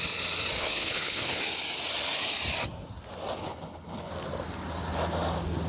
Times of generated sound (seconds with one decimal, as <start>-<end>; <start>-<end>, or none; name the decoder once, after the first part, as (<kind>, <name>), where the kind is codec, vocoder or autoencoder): 0.6-1.4 (codec, HILCodec); 3.4-4.1